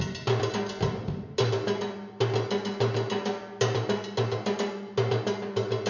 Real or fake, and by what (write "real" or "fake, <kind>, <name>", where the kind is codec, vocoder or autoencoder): real